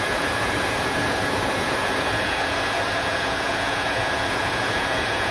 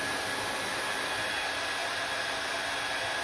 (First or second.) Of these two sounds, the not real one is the first